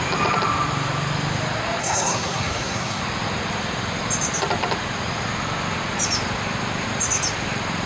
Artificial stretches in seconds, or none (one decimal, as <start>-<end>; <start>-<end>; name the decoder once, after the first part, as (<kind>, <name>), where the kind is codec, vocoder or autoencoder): 1.8-3.0 (codec, SNAC)